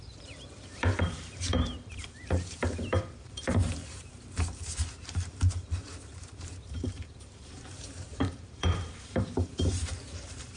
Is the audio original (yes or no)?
no